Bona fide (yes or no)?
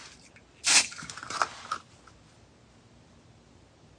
yes